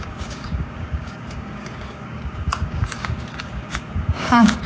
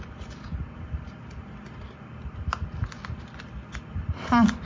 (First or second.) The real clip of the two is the second